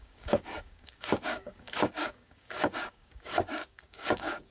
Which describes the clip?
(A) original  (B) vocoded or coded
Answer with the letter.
B